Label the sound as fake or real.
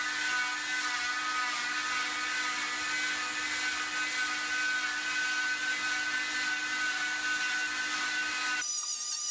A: real